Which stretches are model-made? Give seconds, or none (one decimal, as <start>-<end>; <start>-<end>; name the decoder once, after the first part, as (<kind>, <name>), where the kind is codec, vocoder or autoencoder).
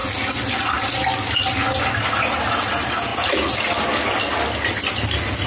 none